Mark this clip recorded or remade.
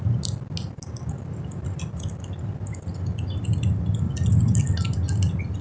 recorded